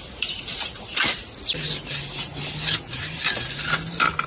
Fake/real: real